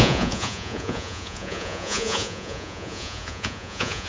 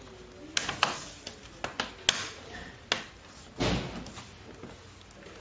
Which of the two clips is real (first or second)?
second